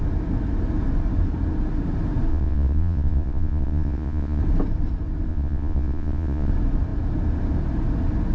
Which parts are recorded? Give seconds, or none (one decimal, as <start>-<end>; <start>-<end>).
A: 0.0-2.3; 4.4-5.3; 6.5-8.3